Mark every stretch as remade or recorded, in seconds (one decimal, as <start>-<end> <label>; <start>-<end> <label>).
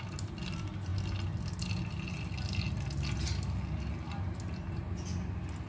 0.0-5.7 recorded